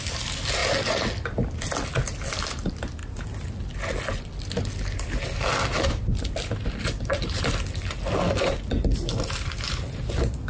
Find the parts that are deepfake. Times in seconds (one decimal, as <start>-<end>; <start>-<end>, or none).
none